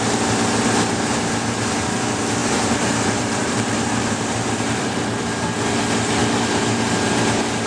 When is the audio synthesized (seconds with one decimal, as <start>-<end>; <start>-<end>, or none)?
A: 2.4-5.2